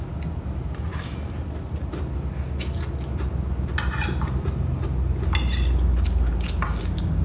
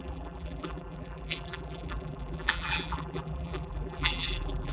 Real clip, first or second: first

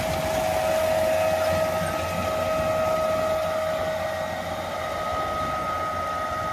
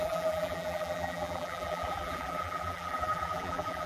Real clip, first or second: first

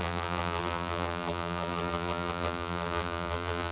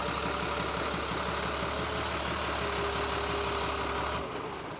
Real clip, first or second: second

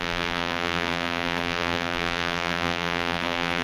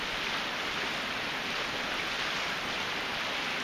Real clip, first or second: second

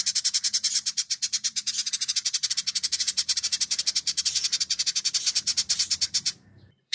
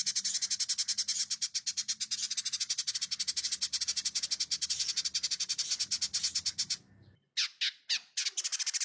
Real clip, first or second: second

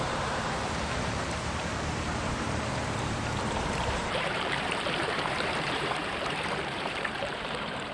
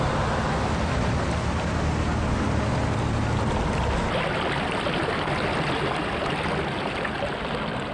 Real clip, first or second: second